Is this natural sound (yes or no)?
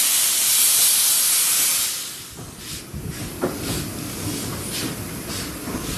yes